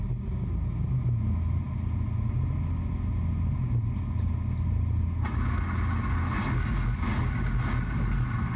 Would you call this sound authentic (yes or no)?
yes